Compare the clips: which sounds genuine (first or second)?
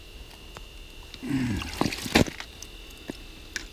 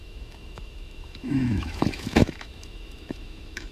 first